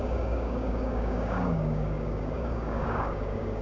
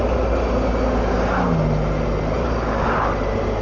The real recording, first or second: second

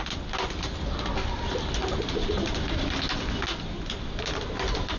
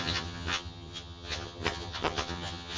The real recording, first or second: first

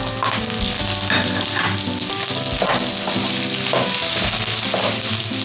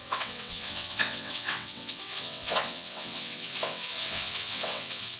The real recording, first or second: first